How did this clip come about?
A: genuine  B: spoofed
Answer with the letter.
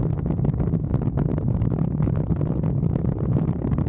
A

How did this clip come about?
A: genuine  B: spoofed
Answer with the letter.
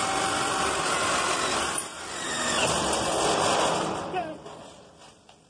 A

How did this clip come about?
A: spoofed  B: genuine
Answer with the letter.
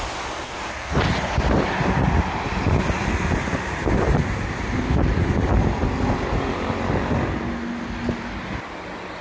B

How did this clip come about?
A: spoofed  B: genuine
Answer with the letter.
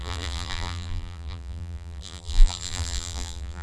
A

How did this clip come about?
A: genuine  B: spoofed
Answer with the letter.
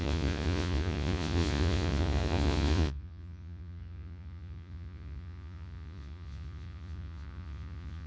B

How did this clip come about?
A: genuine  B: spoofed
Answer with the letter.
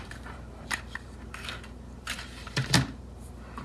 B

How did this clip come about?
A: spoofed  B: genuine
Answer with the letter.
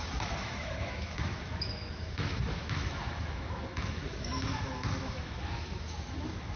A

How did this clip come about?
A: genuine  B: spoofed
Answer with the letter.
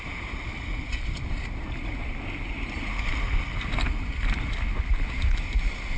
A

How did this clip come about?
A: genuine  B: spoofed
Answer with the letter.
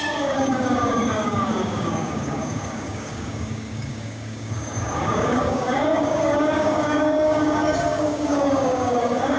B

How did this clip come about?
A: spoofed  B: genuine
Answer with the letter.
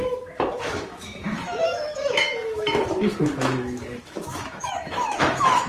A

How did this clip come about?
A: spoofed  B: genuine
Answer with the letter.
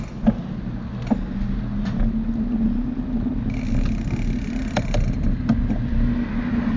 B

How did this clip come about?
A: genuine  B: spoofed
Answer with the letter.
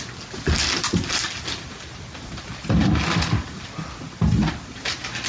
A